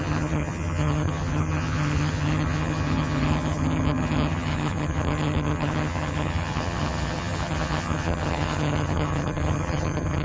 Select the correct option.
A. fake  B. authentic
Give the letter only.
A